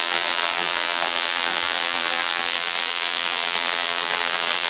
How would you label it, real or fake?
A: fake